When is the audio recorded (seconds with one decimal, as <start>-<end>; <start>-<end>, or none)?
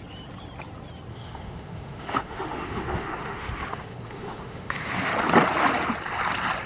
0.0-1.1; 5.1-6.7